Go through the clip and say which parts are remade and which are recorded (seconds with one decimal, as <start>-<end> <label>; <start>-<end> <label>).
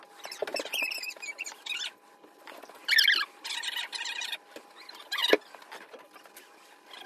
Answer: 0.0-7.1 recorded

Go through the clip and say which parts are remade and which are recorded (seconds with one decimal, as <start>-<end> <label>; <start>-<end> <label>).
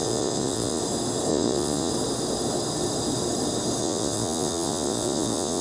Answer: 0.0-0.8 remade; 0.8-1.3 recorded; 1.3-1.9 remade; 1.9-3.8 recorded; 3.8-5.6 remade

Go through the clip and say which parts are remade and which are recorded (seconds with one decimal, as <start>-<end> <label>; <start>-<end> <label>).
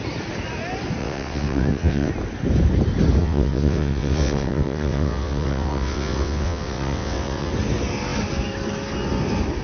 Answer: 0.0-1.0 recorded; 1.0-2.1 remade; 2.1-3.2 recorded; 3.2-7.5 remade; 7.5-9.6 recorded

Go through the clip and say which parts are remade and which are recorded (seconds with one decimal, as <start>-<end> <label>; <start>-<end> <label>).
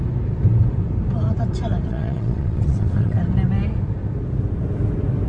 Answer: 0.0-1.9 recorded; 1.9-3.2 remade; 3.2-5.3 recorded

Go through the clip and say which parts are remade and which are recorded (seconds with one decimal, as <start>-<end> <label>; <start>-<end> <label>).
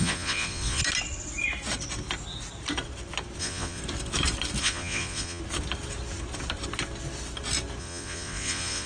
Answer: 0.0-0.8 remade; 0.8-3.4 recorded; 3.4-3.8 remade; 3.8-4.6 recorded; 4.6-5.4 remade; 5.4-7.8 recorded; 7.8-8.9 remade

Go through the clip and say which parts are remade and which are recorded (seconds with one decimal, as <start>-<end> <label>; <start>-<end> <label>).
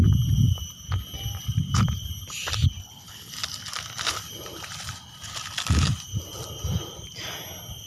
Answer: 0.0-2.8 recorded; 2.8-3.3 remade; 3.3-7.9 recorded